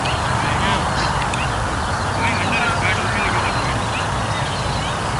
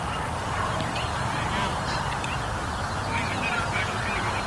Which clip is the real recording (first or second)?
first